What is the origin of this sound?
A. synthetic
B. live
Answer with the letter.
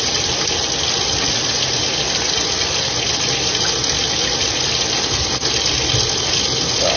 B